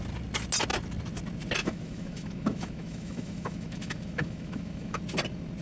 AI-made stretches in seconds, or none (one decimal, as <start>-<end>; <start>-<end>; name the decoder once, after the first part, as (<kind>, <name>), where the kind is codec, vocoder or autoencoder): 1.6-5.0 (autoencoder, DAC-VAE)